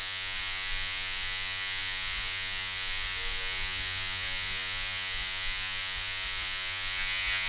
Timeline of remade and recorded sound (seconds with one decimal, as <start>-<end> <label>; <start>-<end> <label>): 0.0-7.5 remade